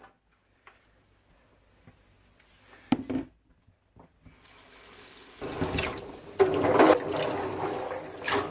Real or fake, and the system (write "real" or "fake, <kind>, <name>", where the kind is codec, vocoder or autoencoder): real